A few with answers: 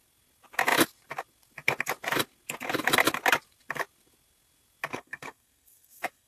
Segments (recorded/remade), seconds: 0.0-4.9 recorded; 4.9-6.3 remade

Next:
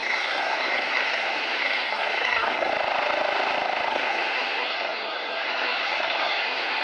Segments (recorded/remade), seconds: 0.0-2.7 remade; 2.7-3.9 recorded; 3.9-6.8 remade

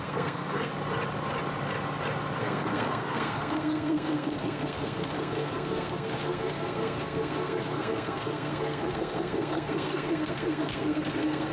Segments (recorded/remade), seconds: 0.0-0.7 remade; 0.7-2.4 recorded; 2.4-11.5 remade

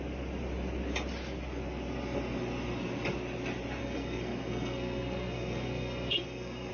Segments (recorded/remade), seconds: 0.0-3.8 recorded; 3.8-6.7 remade

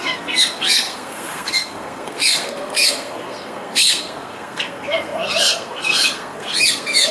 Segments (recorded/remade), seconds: 0.0-7.1 remade

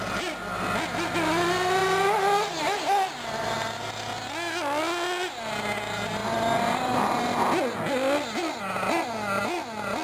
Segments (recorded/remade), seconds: 0.0-10.0 recorded

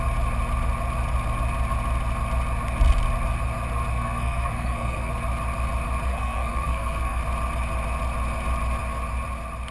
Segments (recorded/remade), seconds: 0.0-3.9 recorded; 3.9-5.1 remade; 5.1-6.1 recorded; 6.1-7.2 remade; 7.2-9.7 recorded

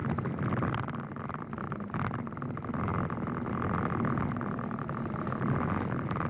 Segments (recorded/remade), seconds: 0.0-6.3 recorded